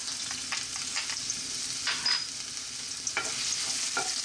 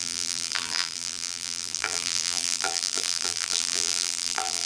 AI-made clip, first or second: second